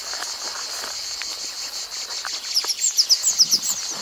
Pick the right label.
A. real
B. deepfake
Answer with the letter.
A